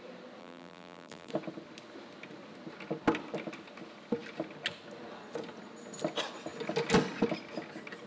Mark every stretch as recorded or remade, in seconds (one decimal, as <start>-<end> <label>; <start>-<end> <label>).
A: 0.0-0.4 recorded; 0.4-1.3 remade; 1.3-8.1 recorded